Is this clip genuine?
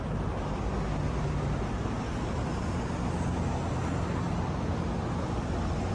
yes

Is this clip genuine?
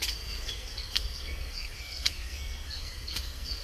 no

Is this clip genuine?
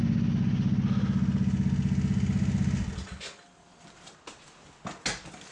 yes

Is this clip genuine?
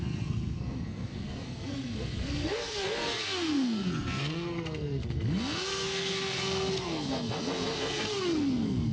no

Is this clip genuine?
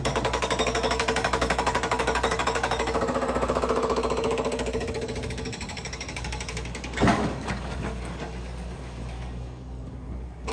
no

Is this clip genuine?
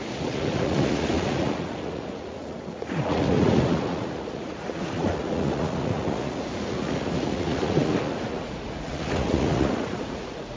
no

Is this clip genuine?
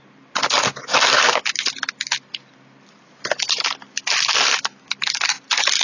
yes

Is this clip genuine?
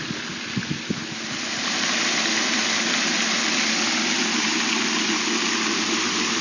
yes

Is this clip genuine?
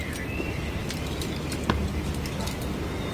yes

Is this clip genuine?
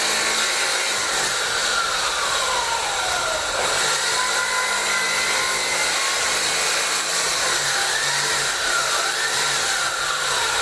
yes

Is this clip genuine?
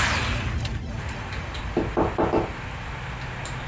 yes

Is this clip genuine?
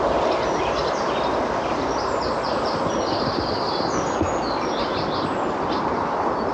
yes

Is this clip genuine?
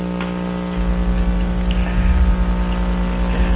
yes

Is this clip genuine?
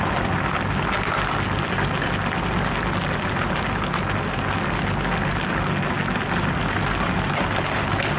yes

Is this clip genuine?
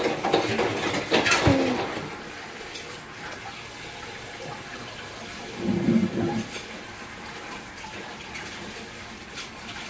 yes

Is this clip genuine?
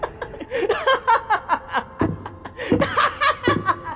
yes